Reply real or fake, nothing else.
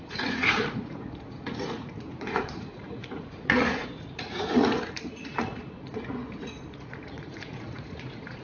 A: fake